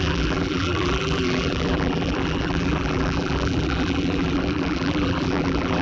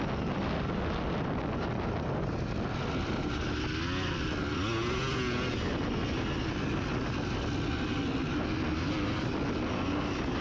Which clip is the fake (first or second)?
first